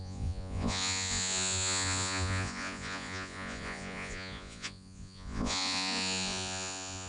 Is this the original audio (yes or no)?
no